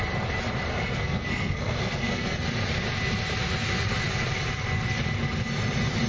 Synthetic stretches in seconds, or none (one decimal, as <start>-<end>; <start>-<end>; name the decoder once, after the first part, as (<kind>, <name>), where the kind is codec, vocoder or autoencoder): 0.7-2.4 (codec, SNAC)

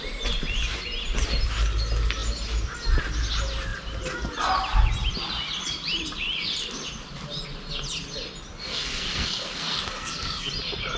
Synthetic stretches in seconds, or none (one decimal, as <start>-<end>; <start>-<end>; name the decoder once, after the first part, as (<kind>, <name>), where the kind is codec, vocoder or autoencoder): 8.7-10.5 (codec, SNAC)

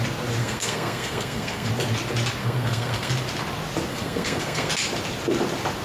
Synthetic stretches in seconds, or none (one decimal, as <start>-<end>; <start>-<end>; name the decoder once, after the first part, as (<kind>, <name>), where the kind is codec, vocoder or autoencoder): 0.4-1.7 (codec, SNAC); 2.4-3.1; 3.9-4.7

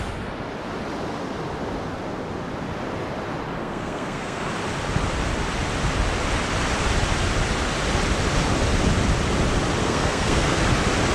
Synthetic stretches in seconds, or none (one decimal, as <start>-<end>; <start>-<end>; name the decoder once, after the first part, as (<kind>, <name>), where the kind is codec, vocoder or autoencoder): 3.6-4.5 (codec, SNAC); 9.8-10.6